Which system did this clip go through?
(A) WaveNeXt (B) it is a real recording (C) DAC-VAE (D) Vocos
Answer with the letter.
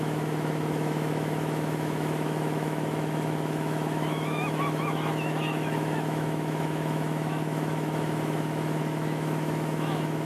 C